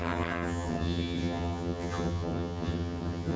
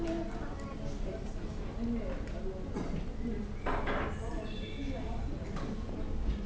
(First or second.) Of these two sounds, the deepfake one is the first